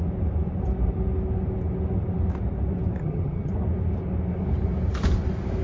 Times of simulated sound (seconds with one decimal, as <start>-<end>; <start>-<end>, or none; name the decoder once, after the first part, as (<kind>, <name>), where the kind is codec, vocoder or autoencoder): 3.0-3.5 (vocoder, HiFi-GAN)

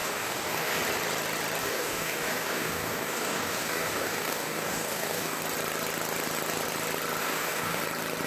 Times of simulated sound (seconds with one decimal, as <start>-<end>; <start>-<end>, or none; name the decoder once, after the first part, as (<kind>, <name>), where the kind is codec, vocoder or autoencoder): 0.0-0.8 (codec, DAC); 1.6-5.4; 7.2-7.8